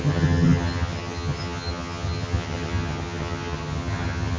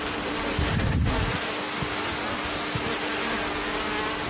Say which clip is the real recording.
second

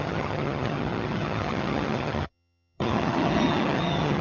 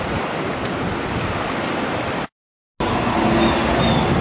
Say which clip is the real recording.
second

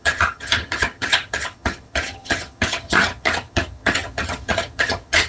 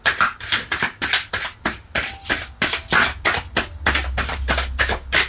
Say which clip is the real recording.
second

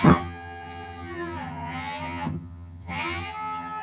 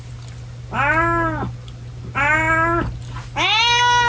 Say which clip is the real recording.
second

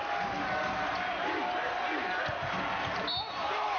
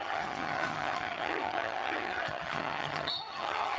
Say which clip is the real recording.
first